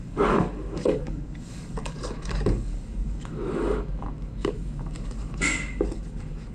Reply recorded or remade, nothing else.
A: remade